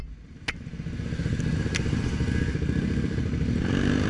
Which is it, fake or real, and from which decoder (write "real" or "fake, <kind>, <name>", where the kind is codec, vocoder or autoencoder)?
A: real